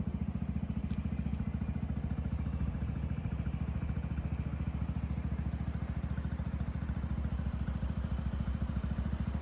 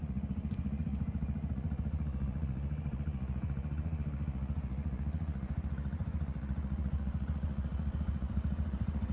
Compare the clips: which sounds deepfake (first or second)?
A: second